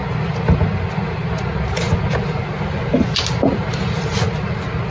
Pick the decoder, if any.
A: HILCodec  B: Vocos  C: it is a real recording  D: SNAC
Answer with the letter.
C